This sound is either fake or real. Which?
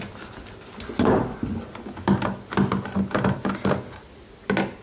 real